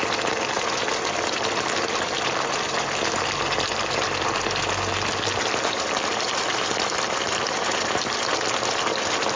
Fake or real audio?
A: real